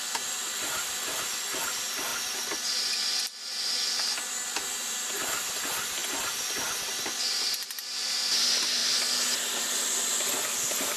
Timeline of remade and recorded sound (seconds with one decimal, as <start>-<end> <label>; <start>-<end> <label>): 0.0-11.0 recorded